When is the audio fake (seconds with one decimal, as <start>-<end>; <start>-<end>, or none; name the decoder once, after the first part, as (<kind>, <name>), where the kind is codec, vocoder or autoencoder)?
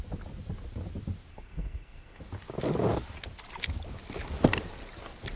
1.3-2.2 (codec, SNAC)